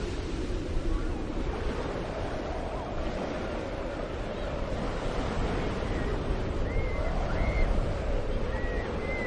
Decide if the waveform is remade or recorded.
recorded